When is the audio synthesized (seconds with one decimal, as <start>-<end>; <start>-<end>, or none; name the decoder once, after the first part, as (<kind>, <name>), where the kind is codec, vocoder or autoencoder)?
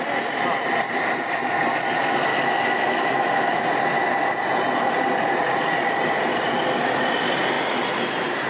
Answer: 2.3-3.6 (autoencoder, DAC-VAE)